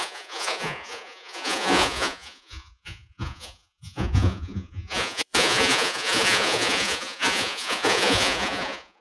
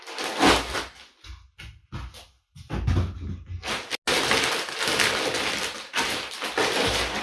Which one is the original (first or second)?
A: second